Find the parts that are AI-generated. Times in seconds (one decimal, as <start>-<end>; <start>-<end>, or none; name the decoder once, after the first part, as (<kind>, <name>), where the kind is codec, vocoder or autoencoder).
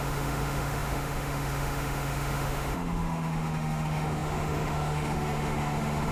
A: 0.0-6.1 (autoencoder, DAC-VAE)